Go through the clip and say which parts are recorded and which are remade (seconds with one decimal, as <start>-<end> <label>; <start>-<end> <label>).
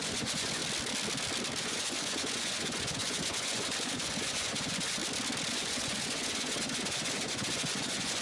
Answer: 0.0-0.6 remade; 0.6-1.6 recorded; 1.6-5.0 remade; 5.0-5.5 recorded; 5.5-8.2 remade